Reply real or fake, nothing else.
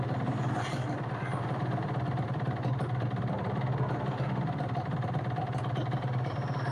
fake